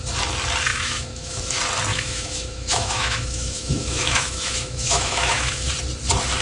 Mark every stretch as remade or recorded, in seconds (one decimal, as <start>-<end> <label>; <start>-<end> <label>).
0.0-0.7 recorded; 0.7-1.4 remade; 1.4-1.9 recorded; 1.9-5.7 remade; 5.7-6.4 recorded